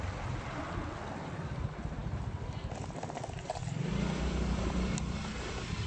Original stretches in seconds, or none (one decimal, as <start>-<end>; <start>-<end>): 0.0-5.9